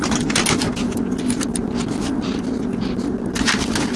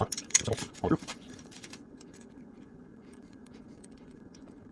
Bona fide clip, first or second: first